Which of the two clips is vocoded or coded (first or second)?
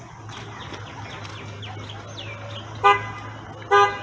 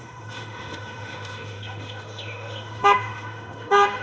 second